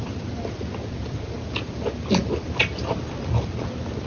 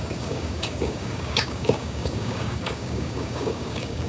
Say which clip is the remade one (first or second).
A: second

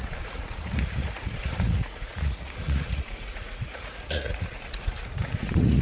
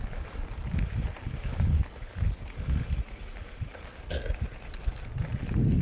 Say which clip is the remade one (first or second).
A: first